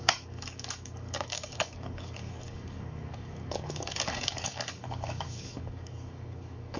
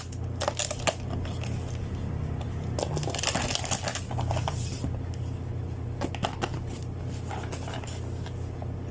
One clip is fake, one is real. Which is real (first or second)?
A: second